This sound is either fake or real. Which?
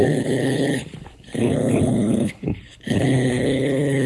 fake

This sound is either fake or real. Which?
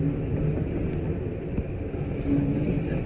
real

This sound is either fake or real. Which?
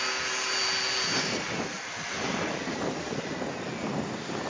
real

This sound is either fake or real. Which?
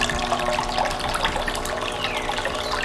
real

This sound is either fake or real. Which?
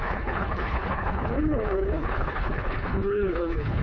fake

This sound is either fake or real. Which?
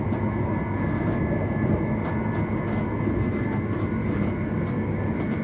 real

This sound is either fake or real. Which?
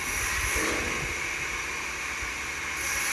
real